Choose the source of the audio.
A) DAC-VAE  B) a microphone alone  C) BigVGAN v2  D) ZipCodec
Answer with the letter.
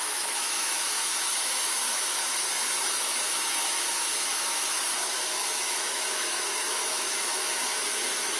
A